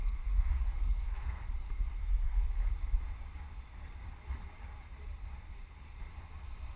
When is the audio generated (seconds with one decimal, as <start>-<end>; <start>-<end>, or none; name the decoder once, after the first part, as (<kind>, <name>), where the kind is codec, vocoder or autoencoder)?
0.0-1.4 (codec, SNAC); 2.0-2.7